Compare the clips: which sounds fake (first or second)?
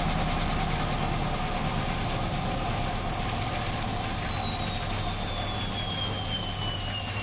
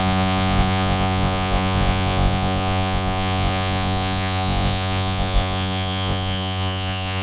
second